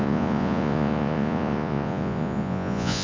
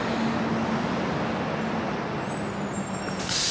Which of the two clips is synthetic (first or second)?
first